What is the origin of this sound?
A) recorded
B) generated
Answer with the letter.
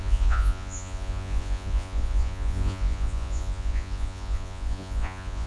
B